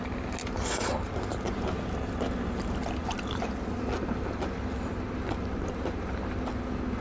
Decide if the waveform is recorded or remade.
recorded